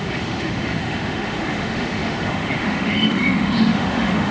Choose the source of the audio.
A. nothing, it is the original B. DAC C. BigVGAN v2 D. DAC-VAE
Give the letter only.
D